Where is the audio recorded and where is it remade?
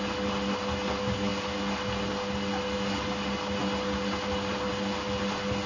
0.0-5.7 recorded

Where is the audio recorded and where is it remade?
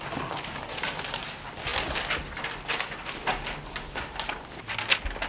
0.0-5.3 recorded